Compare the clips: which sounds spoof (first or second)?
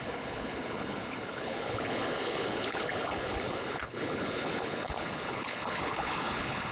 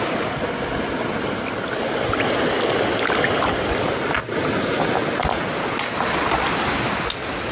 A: first